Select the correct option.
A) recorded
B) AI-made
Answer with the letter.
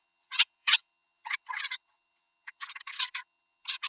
B